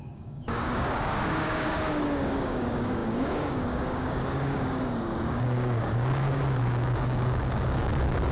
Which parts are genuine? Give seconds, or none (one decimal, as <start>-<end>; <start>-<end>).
none